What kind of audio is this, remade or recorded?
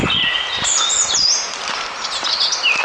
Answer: recorded